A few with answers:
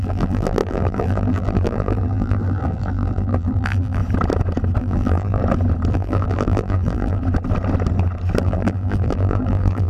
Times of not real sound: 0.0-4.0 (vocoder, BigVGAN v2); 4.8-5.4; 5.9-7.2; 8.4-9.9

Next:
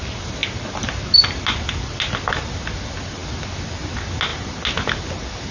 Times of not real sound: none

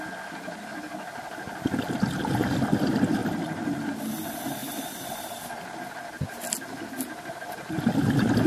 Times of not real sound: 3.2-4.1 (vocoder, BigVGAN v2); 4.6-7.8

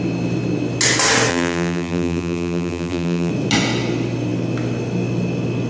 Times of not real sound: 1.3-3.3 (vocoder, BigVGAN v2)

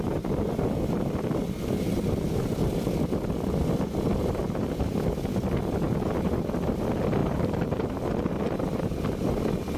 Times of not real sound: 7.2-8.0 (vocoder, BigVGAN v2)

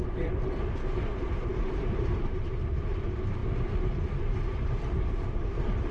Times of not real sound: 1.0-3.4 (vocoder, BigVGAN v2); 4.3-5.9